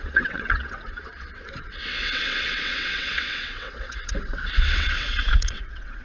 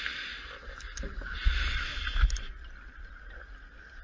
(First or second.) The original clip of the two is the second